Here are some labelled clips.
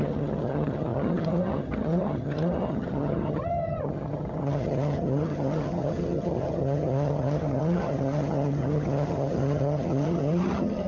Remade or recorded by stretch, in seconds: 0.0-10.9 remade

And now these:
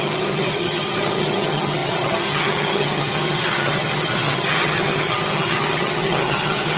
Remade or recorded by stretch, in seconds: 0.0-6.8 remade

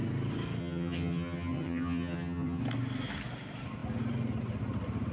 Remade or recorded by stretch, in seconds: 0.0-0.6 recorded; 0.6-2.6 remade; 2.6-5.1 recorded